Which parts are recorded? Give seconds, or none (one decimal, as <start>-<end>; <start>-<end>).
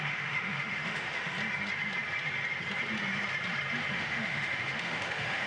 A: 1.3-3.9